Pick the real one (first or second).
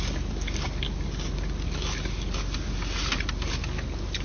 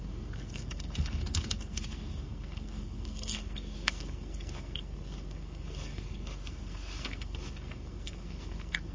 first